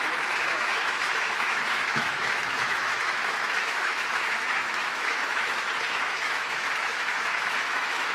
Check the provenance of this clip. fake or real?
fake